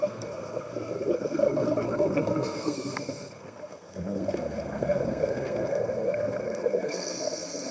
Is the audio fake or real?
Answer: fake